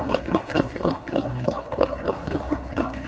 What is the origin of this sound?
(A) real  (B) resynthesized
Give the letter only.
B